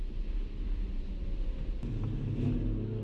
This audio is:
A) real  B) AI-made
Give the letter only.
A